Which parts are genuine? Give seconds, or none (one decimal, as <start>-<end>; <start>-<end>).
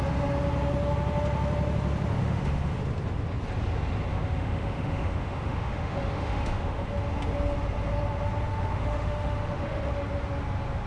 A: 0.0-2.2; 2.8-4.1; 6.9-8.5; 9.9-10.9